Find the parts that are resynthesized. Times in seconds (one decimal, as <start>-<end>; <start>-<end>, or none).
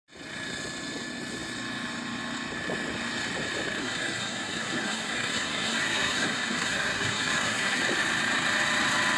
3.8-7.8